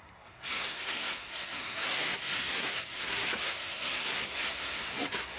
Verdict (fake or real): fake